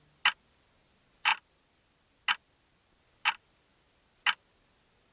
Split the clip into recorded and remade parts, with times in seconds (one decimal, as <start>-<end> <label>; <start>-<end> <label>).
0.0-5.1 recorded